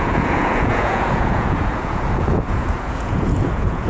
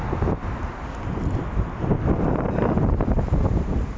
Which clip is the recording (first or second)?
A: second